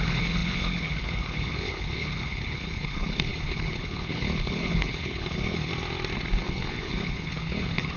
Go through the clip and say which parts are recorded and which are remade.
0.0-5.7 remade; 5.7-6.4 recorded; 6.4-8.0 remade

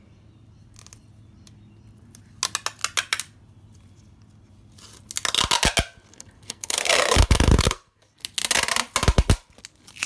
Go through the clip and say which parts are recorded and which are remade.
0.0-6.1 recorded; 6.1-8.1 remade; 8.1-10.1 recorded

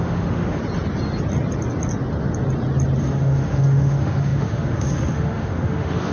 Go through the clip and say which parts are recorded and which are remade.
0.0-0.6 remade; 0.6-3.0 recorded; 3.0-6.1 remade

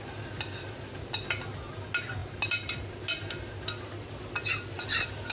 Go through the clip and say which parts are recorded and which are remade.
0.0-5.3 recorded

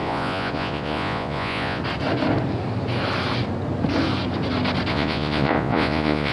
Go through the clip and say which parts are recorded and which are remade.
0.0-1.8 remade; 1.8-4.9 recorded; 4.9-6.3 remade

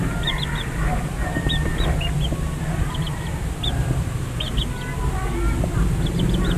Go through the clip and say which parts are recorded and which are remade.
0.0-6.6 recorded

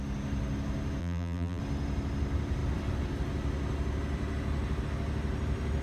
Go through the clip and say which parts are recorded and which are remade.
0.0-1.0 recorded; 1.0-1.6 remade; 1.6-5.8 recorded

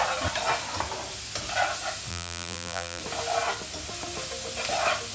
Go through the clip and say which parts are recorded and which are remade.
0.0-2.1 recorded; 2.1-3.0 remade; 3.0-5.1 recorded